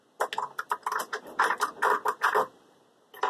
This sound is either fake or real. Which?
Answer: real